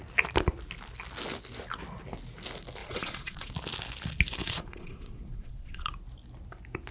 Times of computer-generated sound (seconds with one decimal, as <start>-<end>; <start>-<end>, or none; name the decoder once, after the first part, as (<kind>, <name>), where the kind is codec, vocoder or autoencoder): 2.8-3.5 (vocoder, Vocos); 4.4-5.9